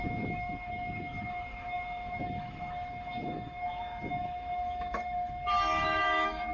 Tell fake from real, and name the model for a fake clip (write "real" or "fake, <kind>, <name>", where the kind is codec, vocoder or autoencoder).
fake, autoencoder, DAC-VAE